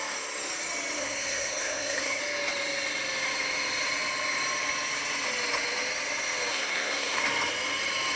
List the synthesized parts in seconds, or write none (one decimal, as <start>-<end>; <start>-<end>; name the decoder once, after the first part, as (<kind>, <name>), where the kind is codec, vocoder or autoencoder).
1.0-2.2 (codec, SNAC); 6.5-7.2